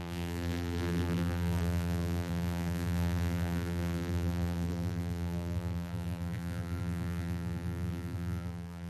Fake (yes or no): yes